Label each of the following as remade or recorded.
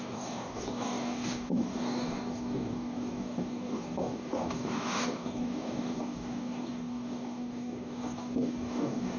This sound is remade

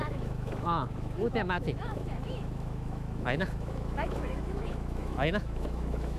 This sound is remade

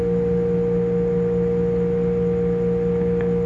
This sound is recorded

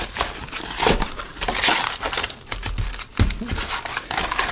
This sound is recorded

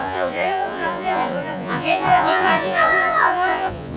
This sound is remade